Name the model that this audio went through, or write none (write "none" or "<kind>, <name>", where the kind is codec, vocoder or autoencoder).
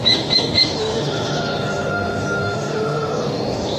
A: autoencoder, DAC-VAE